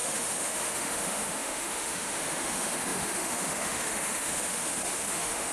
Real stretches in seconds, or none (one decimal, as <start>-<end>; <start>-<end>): none